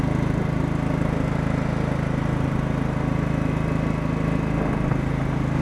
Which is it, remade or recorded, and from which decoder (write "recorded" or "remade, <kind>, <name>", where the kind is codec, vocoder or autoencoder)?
recorded